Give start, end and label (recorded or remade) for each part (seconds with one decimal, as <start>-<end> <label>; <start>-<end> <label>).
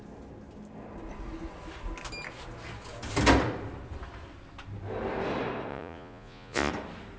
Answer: 0.0-5.7 recorded; 5.7-6.7 remade; 6.7-7.2 recorded